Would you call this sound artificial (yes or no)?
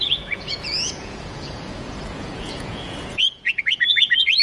yes